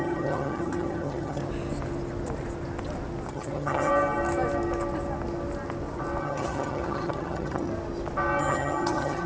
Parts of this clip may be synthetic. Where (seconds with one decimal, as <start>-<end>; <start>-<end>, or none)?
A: 0.0-1.4; 3.3-3.9; 6.2-7.7; 8.4-9.3